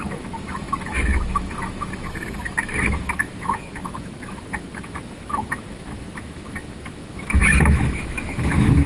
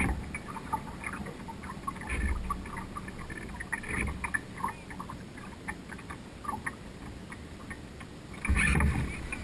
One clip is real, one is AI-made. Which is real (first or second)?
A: second